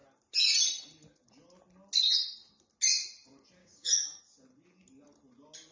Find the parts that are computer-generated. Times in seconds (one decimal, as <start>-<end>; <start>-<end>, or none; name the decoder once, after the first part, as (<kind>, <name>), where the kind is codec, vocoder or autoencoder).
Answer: 3.6-4.2 (codec, DAC)